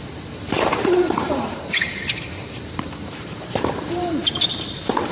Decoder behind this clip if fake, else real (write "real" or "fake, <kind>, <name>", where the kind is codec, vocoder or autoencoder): fake, vocoder, BigVGAN v2